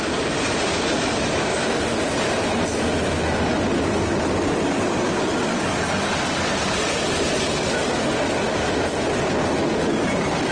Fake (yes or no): no